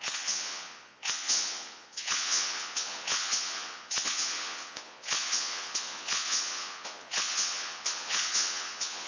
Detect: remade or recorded remade